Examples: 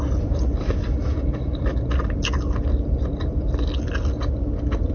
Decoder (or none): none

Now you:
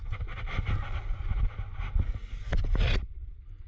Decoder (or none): none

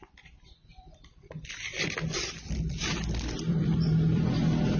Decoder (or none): vocoder, BigVGAN v2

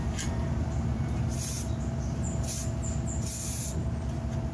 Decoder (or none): none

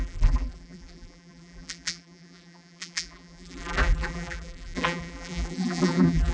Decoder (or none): vocoder, BigVGAN v2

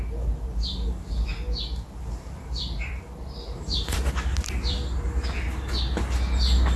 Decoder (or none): none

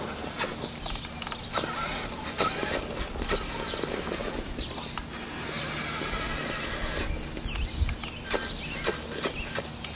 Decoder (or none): none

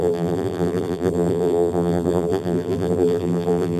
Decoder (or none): vocoder, BigVGAN v2